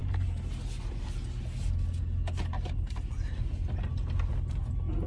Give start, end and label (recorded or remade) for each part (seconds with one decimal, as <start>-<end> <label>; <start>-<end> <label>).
0.0-5.1 recorded